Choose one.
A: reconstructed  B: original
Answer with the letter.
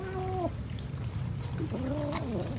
B